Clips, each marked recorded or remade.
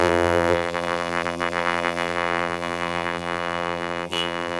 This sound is remade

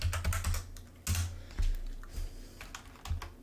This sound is recorded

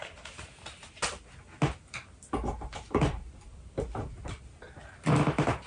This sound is recorded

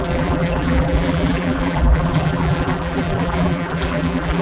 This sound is remade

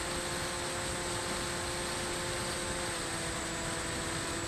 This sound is recorded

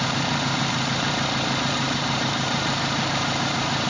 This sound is remade